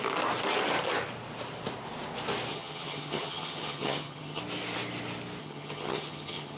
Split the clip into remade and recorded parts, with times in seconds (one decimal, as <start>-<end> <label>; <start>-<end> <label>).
0.0-2.5 recorded; 2.5-4.4 remade; 4.4-5.4 recorded; 5.4-6.6 remade